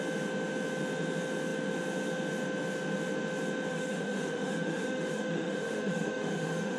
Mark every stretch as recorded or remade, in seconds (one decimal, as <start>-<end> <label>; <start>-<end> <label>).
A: 0.0-3.7 recorded; 3.7-6.8 remade